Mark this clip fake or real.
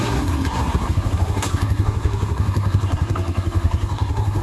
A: fake